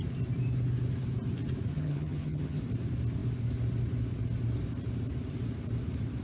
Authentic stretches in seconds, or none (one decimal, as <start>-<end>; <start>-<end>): 0.0-1.7; 2.6-6.2